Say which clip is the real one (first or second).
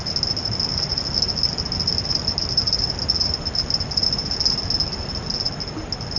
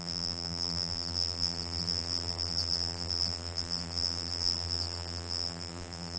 first